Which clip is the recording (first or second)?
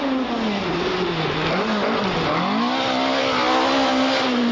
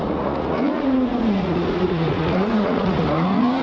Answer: first